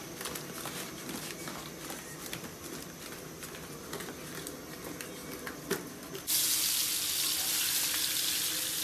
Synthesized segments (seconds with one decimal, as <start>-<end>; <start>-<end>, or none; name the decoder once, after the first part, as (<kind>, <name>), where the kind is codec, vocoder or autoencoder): none

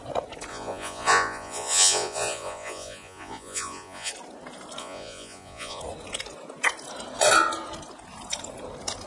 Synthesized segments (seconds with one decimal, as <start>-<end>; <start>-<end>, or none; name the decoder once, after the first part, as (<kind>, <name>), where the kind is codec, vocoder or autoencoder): 0.5-4.1 (vocoder, Vocos); 4.8-5.8

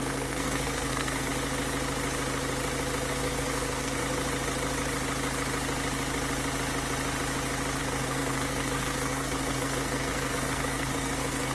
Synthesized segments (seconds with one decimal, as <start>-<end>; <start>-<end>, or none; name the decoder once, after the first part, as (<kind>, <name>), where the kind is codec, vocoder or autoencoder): 0.0-1.3 (codec, SNAC); 3.1-4.0; 7.8-11.5

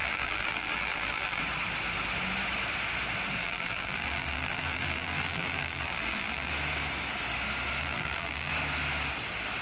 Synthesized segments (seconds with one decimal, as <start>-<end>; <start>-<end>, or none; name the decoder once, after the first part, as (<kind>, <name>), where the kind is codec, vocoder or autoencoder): 0.0-1.4 (vocoder, BigVGAN v2); 3.4-6.5; 7.8-8.5

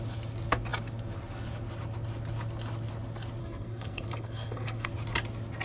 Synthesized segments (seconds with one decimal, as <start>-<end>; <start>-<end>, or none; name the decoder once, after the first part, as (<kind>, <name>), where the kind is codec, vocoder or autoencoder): 3.4-4.9 (codec, SNAC)

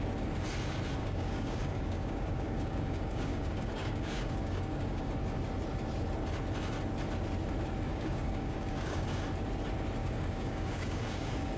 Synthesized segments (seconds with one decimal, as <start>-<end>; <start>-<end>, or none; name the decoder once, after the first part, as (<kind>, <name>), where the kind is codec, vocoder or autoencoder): 1.0-5.1 (codec, DAC); 7.9-9.2; 10.0-11.6